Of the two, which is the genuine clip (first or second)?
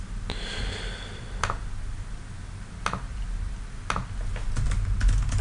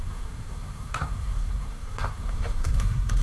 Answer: first